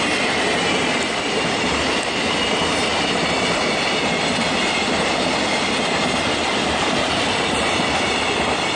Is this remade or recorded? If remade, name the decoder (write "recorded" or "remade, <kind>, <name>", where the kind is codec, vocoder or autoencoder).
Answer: recorded